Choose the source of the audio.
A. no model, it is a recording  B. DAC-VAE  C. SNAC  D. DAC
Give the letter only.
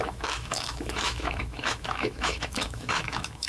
B